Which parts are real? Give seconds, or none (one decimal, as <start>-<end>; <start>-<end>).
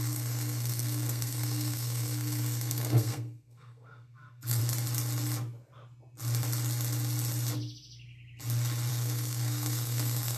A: 4.6-8.9